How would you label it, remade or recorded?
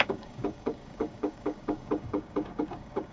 remade